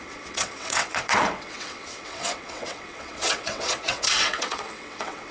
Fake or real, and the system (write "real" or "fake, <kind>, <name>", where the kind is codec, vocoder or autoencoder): fake, vocoder, WaveNeXt